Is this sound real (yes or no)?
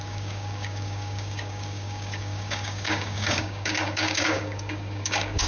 no